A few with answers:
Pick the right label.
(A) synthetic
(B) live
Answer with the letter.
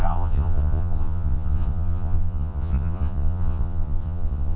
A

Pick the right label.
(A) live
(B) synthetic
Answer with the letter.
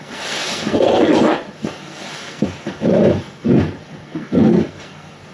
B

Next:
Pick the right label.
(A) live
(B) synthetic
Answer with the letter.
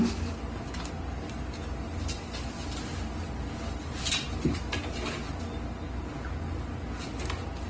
A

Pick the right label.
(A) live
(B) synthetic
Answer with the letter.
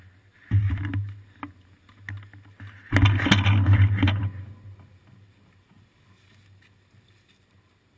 A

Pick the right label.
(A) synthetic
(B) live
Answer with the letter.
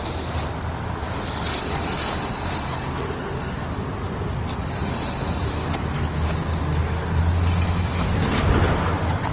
B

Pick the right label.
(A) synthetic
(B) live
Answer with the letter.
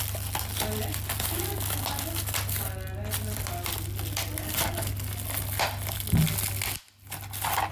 B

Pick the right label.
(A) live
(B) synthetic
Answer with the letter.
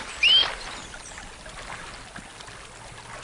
A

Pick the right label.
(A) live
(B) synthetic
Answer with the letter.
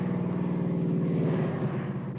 A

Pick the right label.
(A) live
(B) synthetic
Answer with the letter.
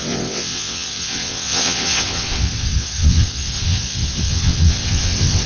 B